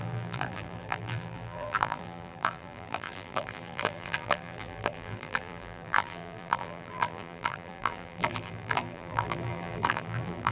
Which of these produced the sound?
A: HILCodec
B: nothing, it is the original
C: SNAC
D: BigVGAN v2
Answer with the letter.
D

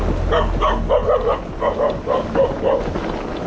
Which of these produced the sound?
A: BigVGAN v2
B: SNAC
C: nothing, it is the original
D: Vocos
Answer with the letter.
C